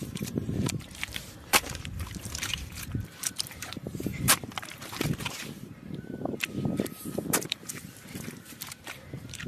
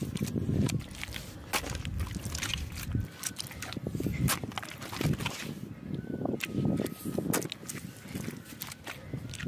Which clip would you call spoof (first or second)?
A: first